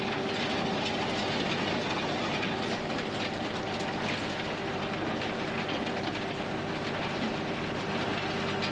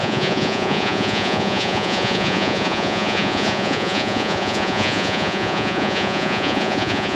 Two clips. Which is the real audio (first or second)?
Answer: first